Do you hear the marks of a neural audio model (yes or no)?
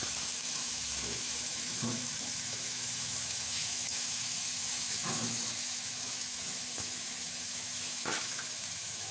yes